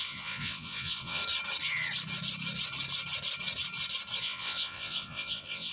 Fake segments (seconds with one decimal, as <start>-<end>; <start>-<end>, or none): 0.0-1.2; 4.2-5.7

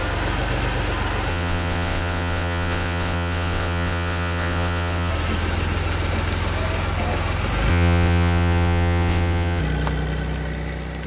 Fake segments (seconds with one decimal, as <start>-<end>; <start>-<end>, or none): 1.3-5.1; 7.7-9.6

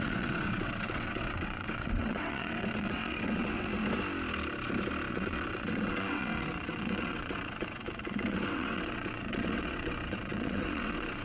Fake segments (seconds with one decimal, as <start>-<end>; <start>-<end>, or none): 0.0-3.7; 5.1-11.2

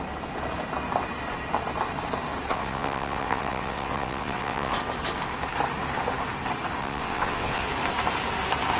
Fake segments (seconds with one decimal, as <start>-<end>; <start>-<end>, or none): 2.5-4.7; 6.8-7.7

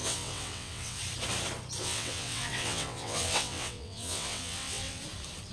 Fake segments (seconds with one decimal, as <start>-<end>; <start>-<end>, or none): 0.0-1.0; 1.8-5.0

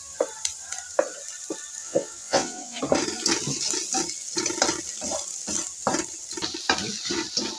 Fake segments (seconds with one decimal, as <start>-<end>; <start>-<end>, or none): 1.8-2.8